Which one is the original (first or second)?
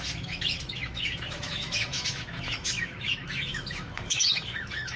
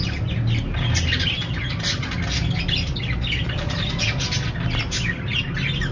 second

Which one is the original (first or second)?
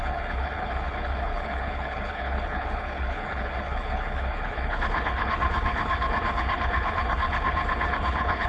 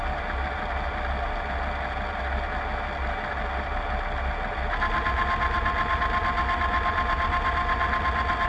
second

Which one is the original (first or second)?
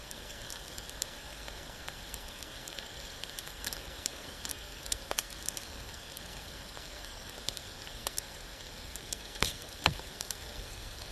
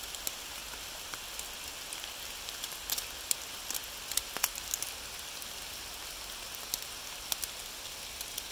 second